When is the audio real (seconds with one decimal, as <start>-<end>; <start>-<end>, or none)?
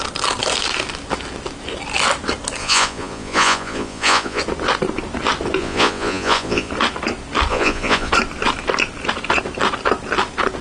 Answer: 0.0-2.6; 4.4-5.6; 6.7-7.5; 8.1-10.6